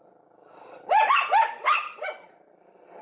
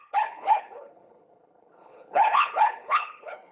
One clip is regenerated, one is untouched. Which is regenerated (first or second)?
second